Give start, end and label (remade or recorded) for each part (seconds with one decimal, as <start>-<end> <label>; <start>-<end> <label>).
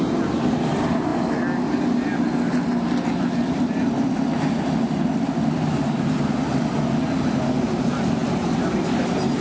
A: 0.0-9.4 recorded